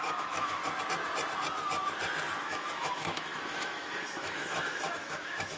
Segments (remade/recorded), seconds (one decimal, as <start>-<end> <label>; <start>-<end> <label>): 0.0-0.6 remade; 0.6-2.4 recorded; 2.4-5.6 remade